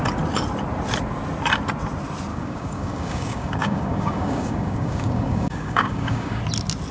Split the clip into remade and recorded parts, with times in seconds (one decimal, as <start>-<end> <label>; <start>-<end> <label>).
0.0-2.3 recorded; 2.3-6.4 remade; 6.4-6.9 recorded